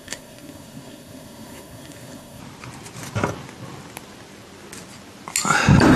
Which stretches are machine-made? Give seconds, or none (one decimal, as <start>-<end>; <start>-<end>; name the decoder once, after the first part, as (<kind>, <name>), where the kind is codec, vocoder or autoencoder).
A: 0.0-2.4 (codec, SNAC)